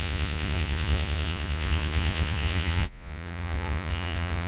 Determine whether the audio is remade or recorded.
remade